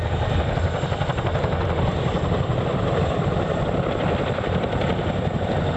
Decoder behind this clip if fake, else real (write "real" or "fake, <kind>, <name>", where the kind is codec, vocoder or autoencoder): fake, vocoder, BigVGAN v2